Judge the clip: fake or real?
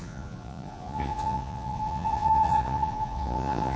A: fake